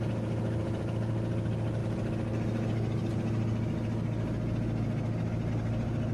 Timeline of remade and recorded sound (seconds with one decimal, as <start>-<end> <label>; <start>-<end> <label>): 0.0-6.1 recorded